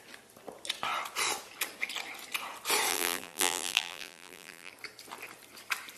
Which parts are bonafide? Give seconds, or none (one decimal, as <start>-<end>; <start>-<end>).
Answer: 0.0-2.9; 4.7-6.0